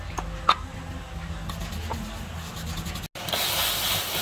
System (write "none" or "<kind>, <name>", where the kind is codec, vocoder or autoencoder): none